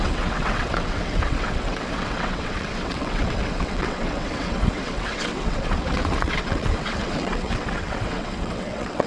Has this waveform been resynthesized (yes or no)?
yes